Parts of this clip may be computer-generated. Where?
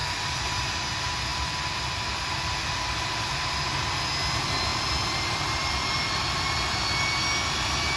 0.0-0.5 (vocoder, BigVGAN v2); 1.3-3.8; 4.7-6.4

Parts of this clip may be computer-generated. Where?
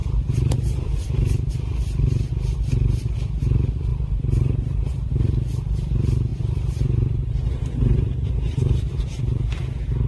0.0-1.5 (vocoder, BigVGAN v2); 3.9-5.1; 6.3-9.0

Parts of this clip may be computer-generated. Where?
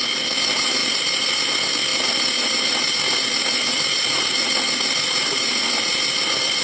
none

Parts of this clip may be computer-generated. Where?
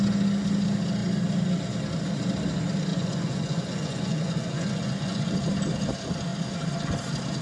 2.9-5.3 (vocoder, Vocos)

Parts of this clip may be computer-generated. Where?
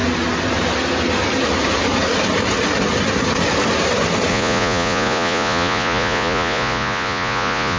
4.3-7.8 (vocoder, Vocos)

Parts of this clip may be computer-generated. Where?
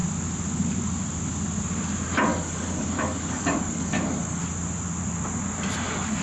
2.3-4.4 (codec, DAC)